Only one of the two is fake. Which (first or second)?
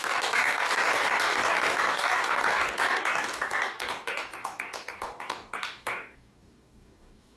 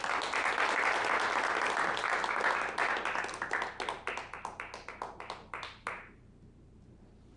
first